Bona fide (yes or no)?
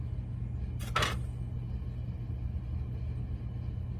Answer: yes